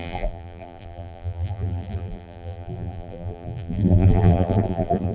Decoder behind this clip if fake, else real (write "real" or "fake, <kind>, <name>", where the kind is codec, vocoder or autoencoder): fake, vocoder, BigVGAN v2